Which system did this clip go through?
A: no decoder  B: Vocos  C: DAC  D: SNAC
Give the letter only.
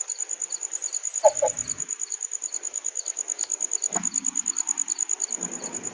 A